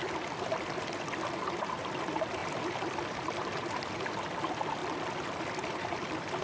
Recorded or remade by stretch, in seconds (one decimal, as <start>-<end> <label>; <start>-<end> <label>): 0.0-6.4 remade